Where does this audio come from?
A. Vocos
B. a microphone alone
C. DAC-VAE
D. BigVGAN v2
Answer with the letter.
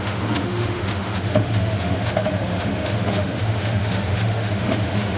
C